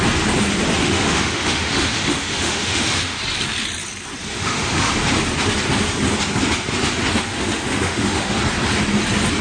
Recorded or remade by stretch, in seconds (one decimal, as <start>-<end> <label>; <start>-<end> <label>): 0.0-0.8 recorded; 0.8-3.2 remade; 3.2-4.3 recorded; 4.3-4.9 remade; 4.9-7.3 recorded; 7.3-8.4 remade; 8.4-9.4 recorded